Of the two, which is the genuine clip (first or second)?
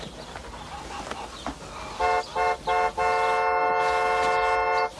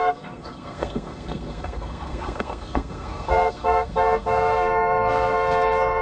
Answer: first